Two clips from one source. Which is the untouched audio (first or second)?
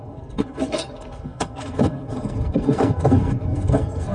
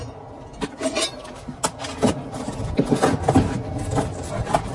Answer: second